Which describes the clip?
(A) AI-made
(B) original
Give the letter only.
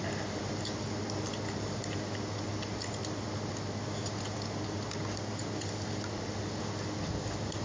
B